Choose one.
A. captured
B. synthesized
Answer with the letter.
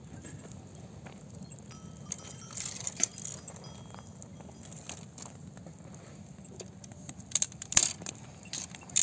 A